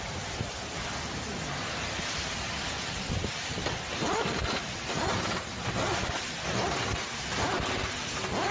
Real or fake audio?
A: real